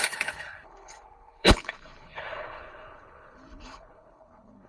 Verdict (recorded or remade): remade